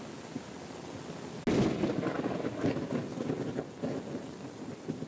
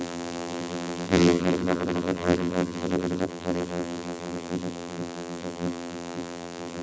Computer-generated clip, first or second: second